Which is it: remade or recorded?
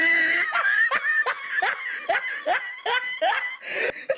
recorded